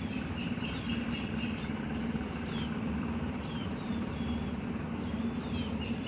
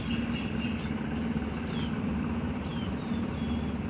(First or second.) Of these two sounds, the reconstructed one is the first